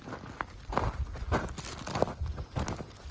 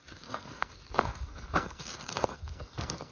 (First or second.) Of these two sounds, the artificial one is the second